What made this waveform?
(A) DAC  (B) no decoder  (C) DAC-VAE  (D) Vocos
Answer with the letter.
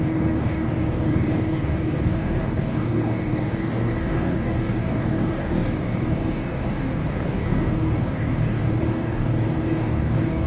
A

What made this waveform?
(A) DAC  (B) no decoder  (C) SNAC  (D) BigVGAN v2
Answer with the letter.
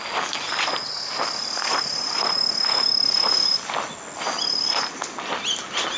B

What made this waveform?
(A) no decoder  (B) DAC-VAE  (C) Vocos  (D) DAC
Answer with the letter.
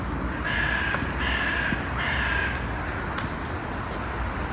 A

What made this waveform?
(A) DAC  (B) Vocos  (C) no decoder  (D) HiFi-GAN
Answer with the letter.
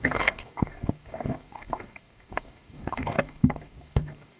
A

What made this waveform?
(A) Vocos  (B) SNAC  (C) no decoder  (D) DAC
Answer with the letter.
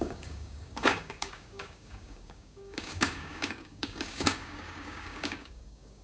D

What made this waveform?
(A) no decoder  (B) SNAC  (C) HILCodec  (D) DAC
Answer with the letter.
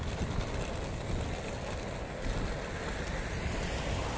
A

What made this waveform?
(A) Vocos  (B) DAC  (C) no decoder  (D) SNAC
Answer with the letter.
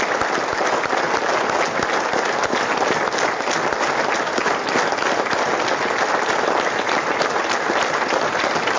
C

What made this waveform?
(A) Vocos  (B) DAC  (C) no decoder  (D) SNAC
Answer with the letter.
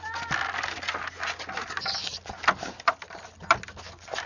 C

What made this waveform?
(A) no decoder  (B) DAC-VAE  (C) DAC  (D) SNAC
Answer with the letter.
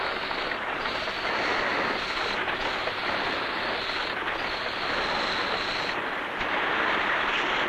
A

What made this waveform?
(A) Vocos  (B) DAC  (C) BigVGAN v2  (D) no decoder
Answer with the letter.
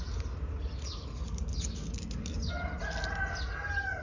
D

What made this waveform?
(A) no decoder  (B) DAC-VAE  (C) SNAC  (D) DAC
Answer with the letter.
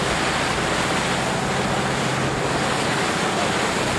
A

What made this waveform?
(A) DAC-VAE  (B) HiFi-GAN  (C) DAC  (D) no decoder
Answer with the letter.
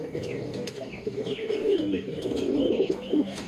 C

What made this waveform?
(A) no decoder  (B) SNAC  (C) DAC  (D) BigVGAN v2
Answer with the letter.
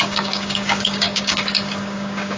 C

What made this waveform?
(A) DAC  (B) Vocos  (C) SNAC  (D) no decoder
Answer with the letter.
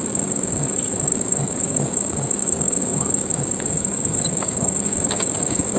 A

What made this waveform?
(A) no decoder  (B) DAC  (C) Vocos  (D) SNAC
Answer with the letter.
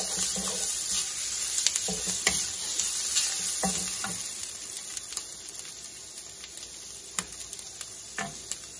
A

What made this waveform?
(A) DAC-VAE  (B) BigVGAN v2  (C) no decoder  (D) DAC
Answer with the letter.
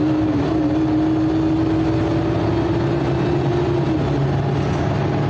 C